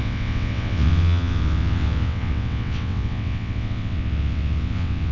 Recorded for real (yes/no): no